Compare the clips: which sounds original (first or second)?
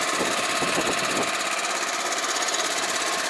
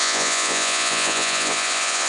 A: first